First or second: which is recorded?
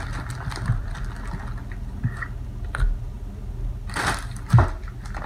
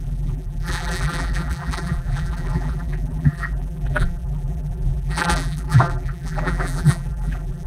first